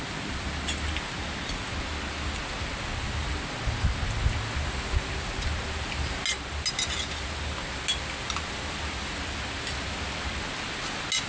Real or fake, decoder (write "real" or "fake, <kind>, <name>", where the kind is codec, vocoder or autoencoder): real